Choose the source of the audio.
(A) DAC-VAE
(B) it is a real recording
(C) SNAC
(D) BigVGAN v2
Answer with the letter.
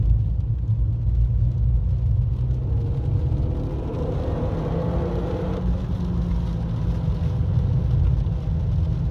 B